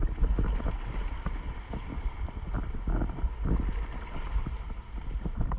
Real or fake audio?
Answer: real